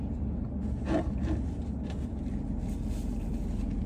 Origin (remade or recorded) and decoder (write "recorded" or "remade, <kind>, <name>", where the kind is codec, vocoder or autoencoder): recorded